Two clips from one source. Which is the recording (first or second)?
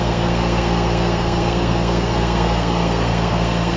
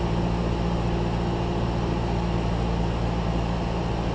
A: second